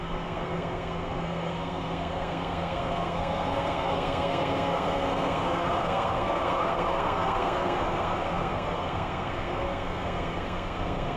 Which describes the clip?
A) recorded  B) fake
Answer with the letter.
B